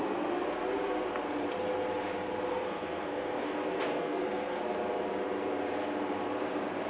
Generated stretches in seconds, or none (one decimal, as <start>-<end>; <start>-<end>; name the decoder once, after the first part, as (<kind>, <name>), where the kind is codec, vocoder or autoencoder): 2.5-4.6 (codec, SNAC)